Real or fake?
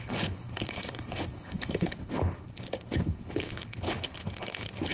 fake